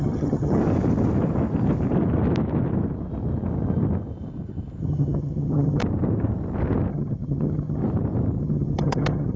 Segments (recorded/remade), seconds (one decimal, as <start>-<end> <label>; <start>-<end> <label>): 0.0-0.6 remade; 0.6-4.8 recorded; 4.8-5.8 remade; 5.8-6.9 recorded; 6.9-7.8 remade; 7.8-8.4 recorded; 8.4-9.4 remade